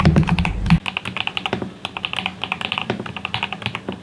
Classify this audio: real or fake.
real